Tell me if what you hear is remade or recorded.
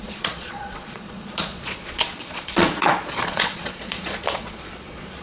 remade